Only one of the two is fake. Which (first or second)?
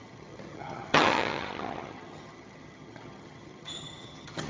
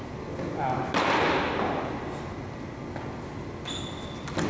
first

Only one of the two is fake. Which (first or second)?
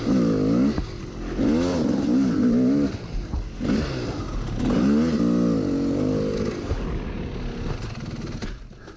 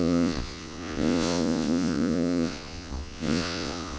second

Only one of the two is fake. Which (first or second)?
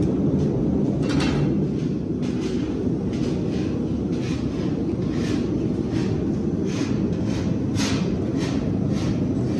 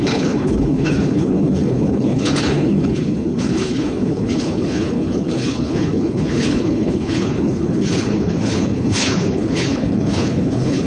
second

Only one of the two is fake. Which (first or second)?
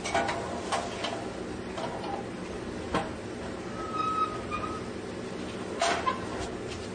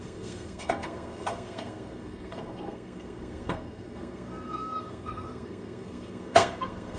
second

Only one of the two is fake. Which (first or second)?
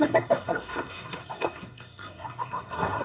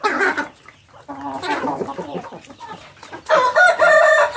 first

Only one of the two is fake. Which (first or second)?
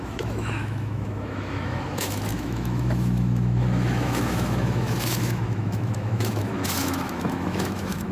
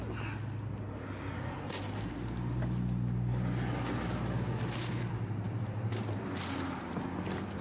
first